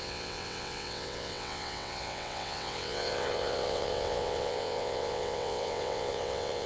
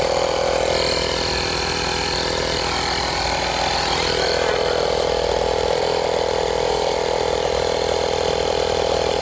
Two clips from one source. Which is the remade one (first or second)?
first